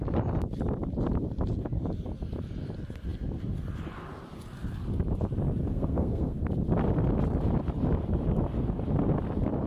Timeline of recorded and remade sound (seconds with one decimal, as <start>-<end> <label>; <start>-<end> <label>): 0.0-5.7 recorded; 5.7-6.4 remade; 6.4-9.7 recorded

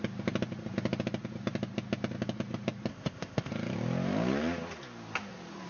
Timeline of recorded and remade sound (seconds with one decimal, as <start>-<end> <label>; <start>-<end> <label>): 0.0-2.9 recorded; 2.9-3.5 remade; 3.5-5.7 recorded

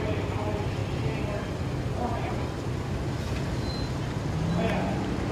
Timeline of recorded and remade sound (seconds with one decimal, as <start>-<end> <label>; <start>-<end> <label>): 0.0-0.8 recorded; 0.8-4.0 remade; 4.0-5.3 recorded

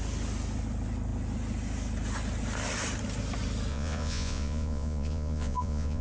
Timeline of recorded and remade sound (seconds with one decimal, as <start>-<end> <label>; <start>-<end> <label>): 0.0-3.7 recorded; 3.7-6.0 remade

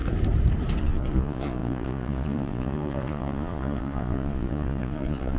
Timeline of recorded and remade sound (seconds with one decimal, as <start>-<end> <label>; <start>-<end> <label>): 0.0-0.8 recorded; 0.8-5.4 remade

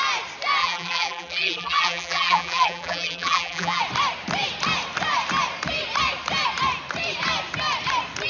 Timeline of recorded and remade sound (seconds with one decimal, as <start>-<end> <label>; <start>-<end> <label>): 0.0-0.6 recorded; 0.6-3.8 remade; 3.8-8.3 recorded

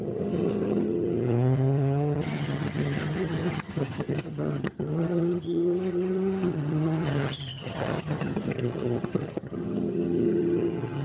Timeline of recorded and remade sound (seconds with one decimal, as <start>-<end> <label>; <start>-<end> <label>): 0.0-11.0 remade

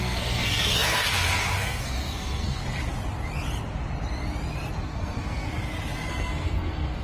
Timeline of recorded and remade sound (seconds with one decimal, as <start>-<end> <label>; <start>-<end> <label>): 0.0-2.6 remade; 2.6-4.8 recorded; 4.8-5.5 remade; 5.5-6.1 recorded; 6.1-7.0 remade